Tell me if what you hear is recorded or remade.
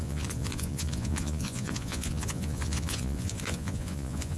remade